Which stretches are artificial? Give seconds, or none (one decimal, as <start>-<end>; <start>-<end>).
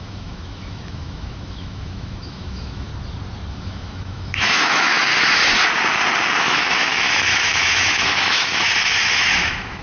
0.0-2.9; 3.5-5.1; 6.4-9.8